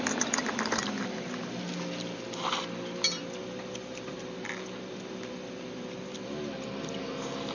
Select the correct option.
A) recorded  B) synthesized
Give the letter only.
A